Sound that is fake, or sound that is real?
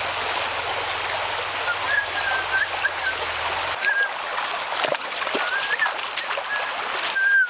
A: real